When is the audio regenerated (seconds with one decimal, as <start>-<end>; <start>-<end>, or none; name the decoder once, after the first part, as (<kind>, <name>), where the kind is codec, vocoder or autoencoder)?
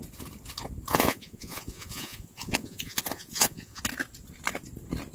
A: 0.9-3.8 (vocoder, Vocos)